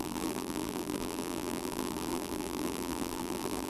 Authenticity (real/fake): fake